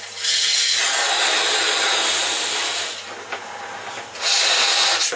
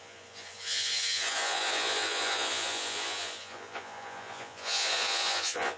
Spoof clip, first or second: second